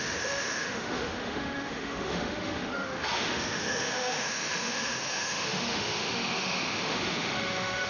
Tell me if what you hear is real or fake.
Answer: fake